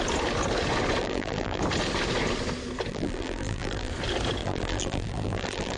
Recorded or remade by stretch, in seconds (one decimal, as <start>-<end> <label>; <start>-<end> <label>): 0.0-1.0 recorded; 1.0-1.6 remade; 1.6-2.9 recorded; 2.9-3.9 remade; 3.9-4.4 recorded; 4.4-5.8 remade